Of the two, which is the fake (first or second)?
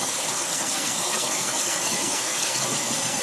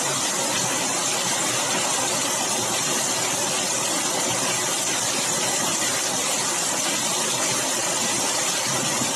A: first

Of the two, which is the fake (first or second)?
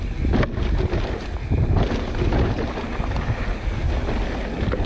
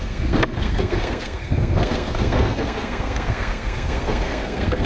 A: second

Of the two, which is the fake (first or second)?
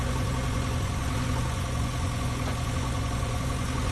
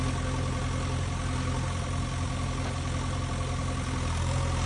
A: first